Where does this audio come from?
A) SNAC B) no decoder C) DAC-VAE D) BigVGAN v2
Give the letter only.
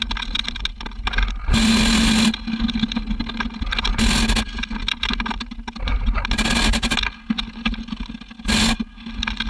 B